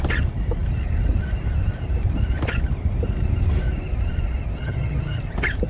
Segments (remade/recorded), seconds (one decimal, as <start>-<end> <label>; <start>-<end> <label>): 0.0-4.6 recorded; 4.6-5.2 remade; 5.2-5.7 recorded

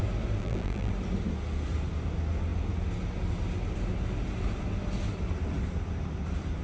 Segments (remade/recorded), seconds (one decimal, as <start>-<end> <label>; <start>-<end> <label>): 0.0-0.4 recorded; 0.4-0.9 remade; 0.9-6.6 recorded